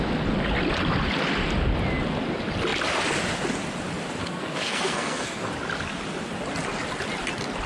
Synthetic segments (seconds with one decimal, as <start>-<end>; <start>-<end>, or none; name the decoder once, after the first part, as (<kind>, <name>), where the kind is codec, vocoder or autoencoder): 4.2-5.5 (codec, SNAC)